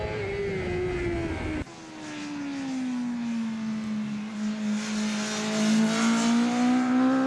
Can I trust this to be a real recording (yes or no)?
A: yes